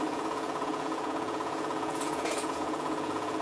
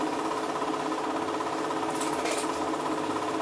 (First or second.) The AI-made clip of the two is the first